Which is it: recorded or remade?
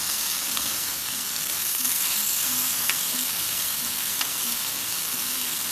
remade